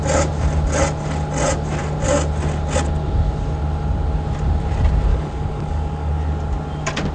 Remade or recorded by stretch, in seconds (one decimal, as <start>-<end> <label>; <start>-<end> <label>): 0.0-5.1 recorded; 5.1-6.1 remade; 6.1-7.1 recorded